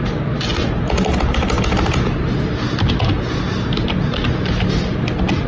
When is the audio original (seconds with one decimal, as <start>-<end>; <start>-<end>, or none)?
0.0-5.5